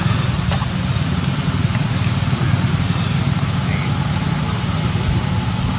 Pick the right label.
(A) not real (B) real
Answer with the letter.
B